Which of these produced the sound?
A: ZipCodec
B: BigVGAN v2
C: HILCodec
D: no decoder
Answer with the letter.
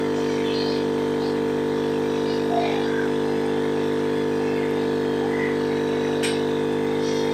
D